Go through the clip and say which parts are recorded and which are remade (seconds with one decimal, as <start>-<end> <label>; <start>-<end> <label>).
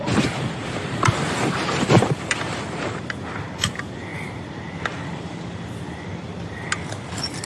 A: 0.0-0.6 recorded; 0.6-3.0 remade; 3.0-7.4 recorded